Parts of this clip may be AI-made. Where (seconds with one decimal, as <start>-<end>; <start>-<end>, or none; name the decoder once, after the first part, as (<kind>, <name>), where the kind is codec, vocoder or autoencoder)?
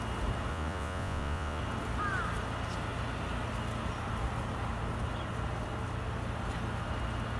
0.5-1.6 (vocoder, Vocos)